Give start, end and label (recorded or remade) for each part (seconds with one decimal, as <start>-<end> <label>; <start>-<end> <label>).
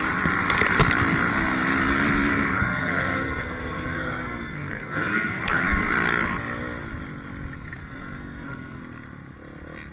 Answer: 0.0-2.3 recorded; 2.3-5.9 remade; 5.9-7.8 recorded; 7.8-8.8 remade; 8.8-9.9 recorded